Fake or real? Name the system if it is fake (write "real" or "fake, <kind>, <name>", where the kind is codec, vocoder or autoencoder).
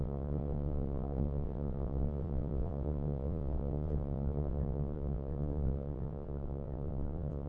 fake, vocoder, WaveNeXt